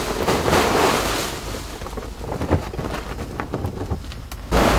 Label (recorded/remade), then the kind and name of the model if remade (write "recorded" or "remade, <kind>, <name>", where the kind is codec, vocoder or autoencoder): recorded